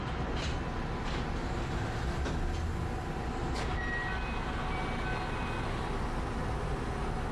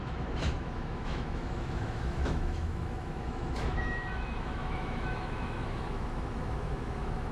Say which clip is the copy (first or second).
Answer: second